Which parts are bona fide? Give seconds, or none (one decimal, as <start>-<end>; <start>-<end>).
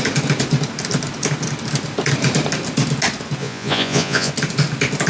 0.0-3.4; 4.3-5.1